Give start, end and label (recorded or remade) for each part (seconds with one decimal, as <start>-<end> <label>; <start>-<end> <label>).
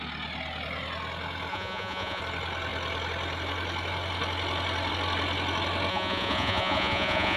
0.0-1.5 recorded; 1.5-2.2 remade; 2.2-5.9 recorded; 5.9-7.4 remade